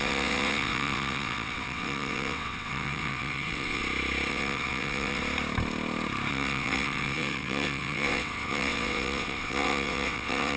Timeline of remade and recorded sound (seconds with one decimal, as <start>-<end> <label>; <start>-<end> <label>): 0.0-3.8 remade; 3.8-4.3 recorded; 4.3-5.2 remade; 5.2-6.3 recorded; 6.3-10.6 remade